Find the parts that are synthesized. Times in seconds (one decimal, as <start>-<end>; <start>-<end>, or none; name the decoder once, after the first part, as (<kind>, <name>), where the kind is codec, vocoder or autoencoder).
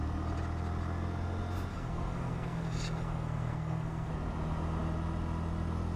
1.7-4.1 (codec, SNAC)